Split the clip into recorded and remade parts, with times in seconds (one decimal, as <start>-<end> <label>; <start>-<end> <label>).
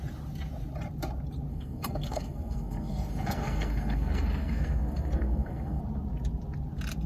0.0-1.5 recorded; 1.5-5.8 remade; 5.8-7.1 recorded